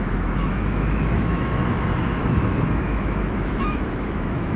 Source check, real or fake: fake